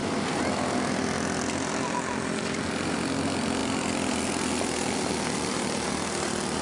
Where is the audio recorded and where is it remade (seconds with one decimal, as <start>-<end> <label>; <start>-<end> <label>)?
0.0-6.6 recorded